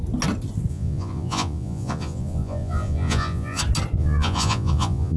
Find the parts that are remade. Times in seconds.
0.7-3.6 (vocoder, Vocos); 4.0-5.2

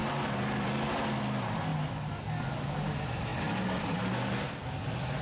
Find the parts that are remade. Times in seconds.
none

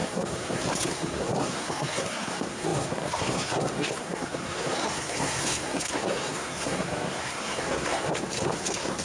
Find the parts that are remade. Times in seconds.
0.0-9.0 (codec, SNAC)

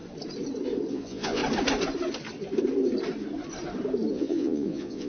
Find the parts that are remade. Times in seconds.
0.9-1.4 (vocoder, Vocos); 4.1-5.1

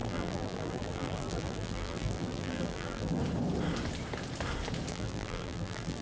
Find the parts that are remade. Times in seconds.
0.0-3.2 (vocoder, BigVGAN v2); 4.9-6.0